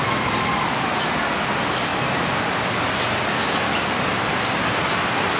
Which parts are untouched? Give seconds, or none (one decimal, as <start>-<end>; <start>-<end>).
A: 0.0-5.4

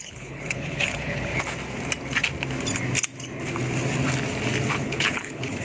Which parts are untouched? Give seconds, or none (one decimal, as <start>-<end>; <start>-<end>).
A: 1.3-4.7